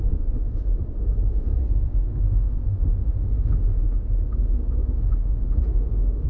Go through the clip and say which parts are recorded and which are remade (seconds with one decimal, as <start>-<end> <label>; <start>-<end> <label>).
0.0-1.6 remade; 1.6-2.2 recorded; 2.2-6.3 remade